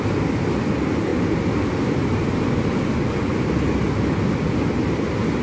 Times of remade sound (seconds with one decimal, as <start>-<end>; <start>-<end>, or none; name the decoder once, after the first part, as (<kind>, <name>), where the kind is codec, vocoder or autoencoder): none